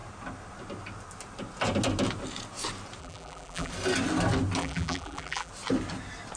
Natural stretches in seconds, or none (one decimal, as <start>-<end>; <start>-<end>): 0.0-3.0; 3.7-4.6; 5.5-6.4